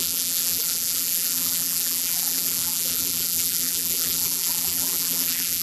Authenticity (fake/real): fake